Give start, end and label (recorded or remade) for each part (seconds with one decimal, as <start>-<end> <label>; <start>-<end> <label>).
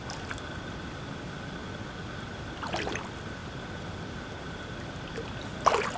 0.0-6.0 recorded